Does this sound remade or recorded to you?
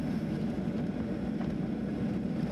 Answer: recorded